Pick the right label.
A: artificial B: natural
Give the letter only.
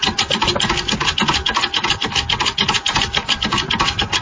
B